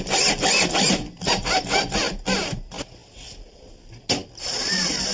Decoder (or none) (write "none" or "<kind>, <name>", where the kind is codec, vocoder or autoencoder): none